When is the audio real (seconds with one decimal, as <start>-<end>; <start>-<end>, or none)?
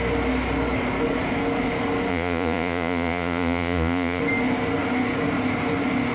0.0-2.1; 4.2-6.1